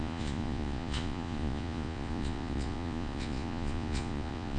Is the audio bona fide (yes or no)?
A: no